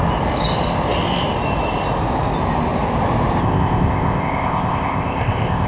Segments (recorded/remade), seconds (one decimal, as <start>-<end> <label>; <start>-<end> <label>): 0.0-3.4 recorded; 3.4-5.7 remade